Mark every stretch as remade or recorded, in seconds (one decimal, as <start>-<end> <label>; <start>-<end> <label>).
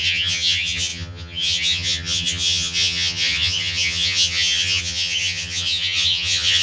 0.0-6.6 remade